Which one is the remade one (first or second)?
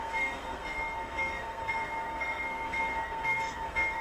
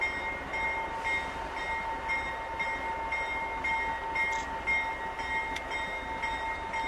first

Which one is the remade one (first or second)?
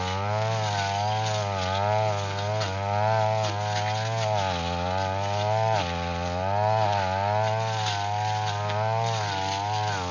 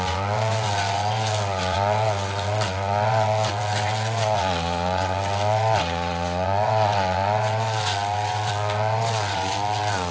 second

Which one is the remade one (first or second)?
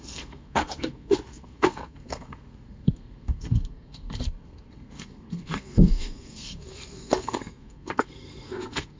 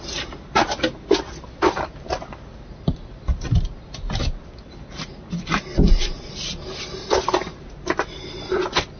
first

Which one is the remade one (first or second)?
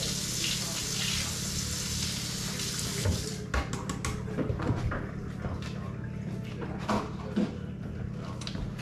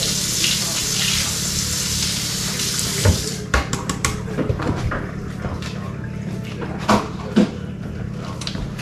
second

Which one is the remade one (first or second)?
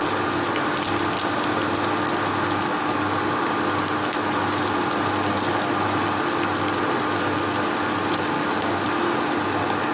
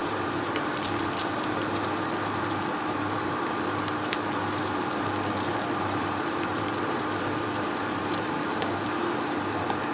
second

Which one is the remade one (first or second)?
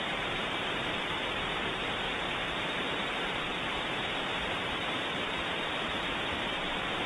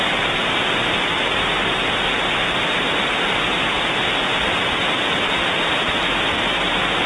first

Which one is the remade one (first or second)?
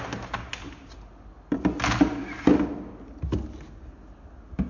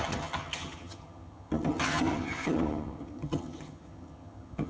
second